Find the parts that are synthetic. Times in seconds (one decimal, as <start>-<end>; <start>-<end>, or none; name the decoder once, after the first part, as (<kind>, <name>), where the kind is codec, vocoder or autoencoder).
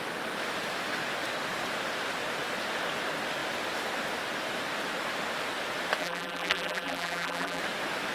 6.0-7.6 (vocoder, BigVGAN v2)